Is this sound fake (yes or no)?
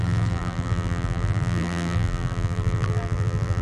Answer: yes